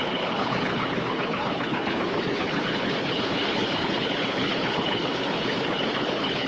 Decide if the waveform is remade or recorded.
remade